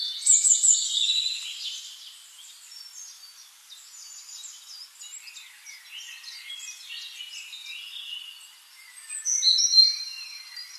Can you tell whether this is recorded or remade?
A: recorded